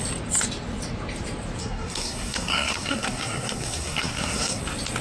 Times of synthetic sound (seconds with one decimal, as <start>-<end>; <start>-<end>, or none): 1.6-4.6